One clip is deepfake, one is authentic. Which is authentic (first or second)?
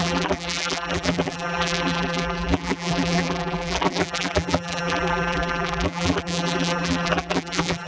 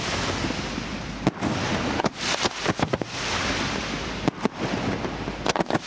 second